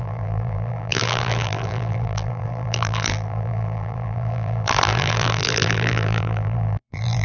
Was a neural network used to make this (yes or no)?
yes